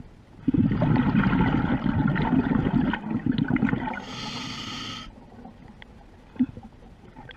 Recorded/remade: recorded